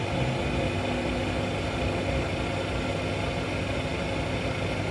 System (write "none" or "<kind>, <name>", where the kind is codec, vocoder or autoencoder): none